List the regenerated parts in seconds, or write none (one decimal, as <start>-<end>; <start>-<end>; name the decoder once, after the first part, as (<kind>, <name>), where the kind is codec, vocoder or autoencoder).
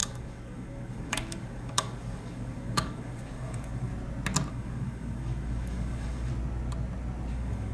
0.0-3.9 (codec, DAC); 4.5-6.3; 7.3-7.7